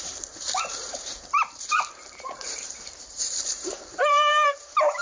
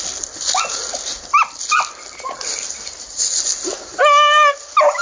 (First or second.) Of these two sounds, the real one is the second